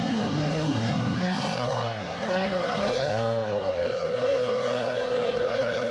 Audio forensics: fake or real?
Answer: fake